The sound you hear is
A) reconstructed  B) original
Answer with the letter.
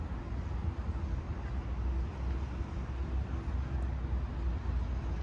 B